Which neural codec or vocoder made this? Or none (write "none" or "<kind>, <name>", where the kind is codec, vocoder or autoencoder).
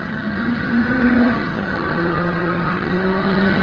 vocoder, HiFi-GAN